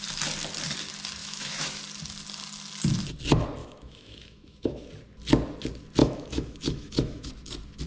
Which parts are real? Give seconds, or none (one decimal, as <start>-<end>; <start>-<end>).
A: 0.0-1.2; 1.8-3.6; 4.9-6.0; 7.3-7.9